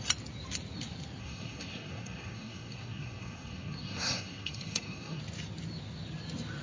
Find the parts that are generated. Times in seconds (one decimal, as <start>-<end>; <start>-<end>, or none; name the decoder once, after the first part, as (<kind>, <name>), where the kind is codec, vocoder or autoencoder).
1.2-5.2 (codec, SNAC)